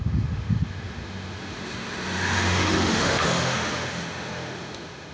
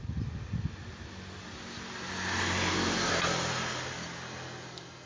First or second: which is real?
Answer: second